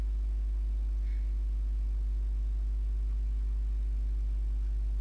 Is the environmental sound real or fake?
real